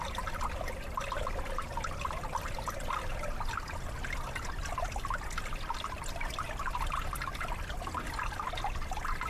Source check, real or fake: real